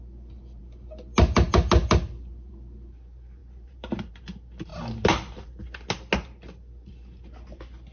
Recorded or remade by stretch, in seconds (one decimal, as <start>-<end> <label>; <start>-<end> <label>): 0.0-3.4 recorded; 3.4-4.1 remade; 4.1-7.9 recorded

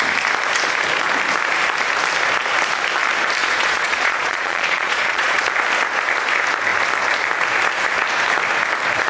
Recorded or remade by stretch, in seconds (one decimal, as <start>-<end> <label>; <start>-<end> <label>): 0.0-3.4 recorded; 3.4-5.4 remade; 5.4-9.1 recorded

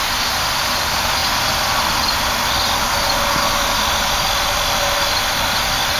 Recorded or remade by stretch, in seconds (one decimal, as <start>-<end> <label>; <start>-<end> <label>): 0.0-6.0 recorded

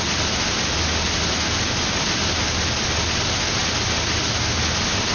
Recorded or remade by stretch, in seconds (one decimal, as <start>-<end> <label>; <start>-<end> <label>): 0.0-5.1 recorded